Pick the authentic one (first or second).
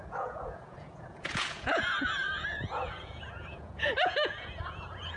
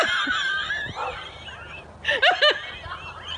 second